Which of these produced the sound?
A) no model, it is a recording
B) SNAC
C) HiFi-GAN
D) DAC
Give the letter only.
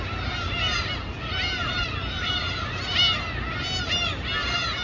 A